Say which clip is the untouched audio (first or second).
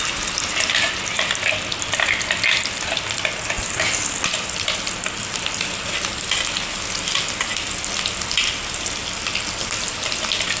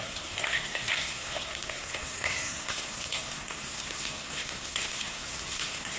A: first